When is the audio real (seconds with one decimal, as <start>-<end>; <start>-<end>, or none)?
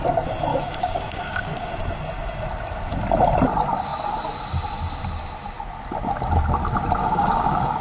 0.0-0.5; 1.7-7.0